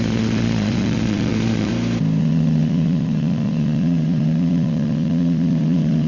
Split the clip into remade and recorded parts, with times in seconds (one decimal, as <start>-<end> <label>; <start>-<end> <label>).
0.0-1.7 remade; 1.7-2.2 recorded; 2.2-6.1 remade